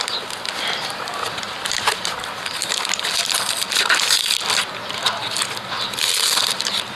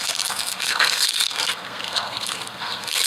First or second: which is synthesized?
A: second